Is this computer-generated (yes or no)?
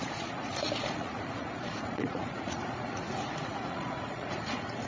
yes